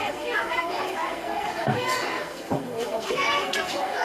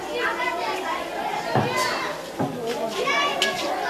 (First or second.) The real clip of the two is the second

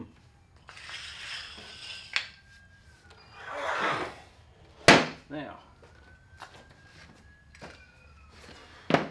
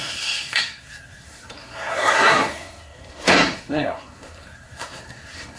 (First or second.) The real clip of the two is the first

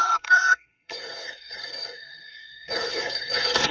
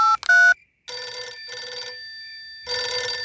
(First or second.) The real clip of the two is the second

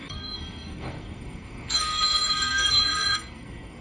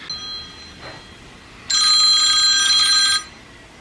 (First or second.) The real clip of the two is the second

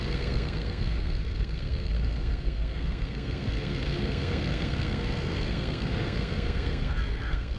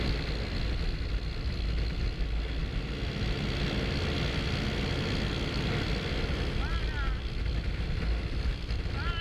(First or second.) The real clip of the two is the second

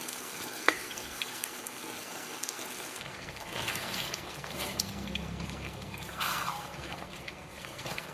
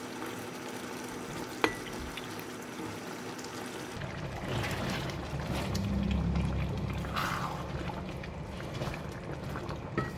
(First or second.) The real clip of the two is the second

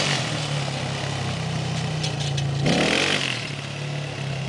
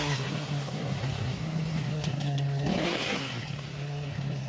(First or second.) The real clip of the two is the first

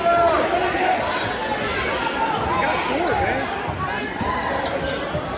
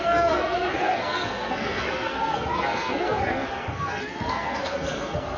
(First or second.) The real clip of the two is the first